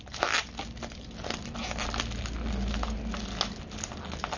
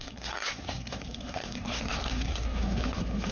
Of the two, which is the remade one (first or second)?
second